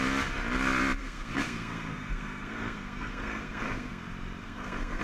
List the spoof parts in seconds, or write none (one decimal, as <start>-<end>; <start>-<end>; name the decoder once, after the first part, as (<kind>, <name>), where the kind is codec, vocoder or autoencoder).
1.0-4.0 (codec, SNAC); 4.4-5.0